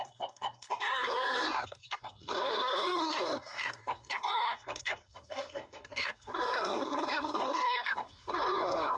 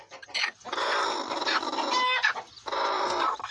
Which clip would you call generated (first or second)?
first